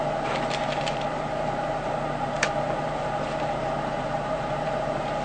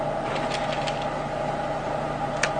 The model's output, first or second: first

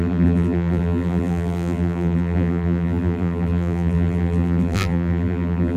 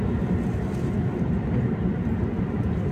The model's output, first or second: first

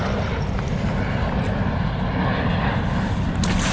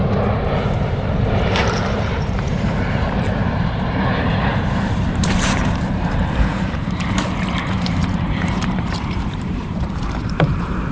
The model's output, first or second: second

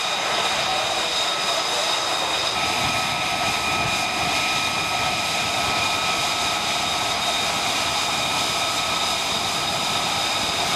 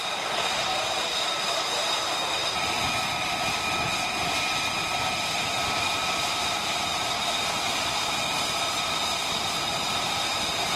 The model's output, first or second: second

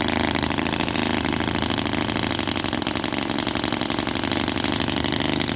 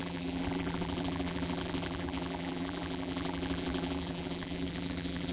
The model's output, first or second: second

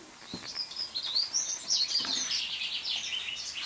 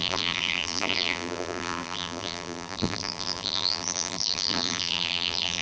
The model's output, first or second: second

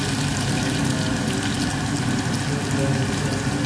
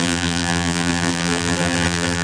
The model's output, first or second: second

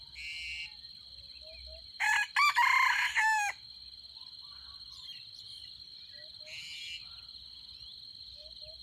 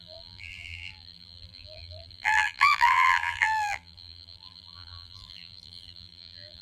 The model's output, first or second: second